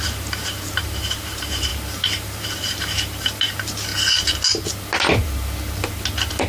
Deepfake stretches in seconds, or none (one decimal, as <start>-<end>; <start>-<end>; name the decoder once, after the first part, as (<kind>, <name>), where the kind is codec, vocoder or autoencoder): 0.0-3.9 (vocoder, BigVGAN v2)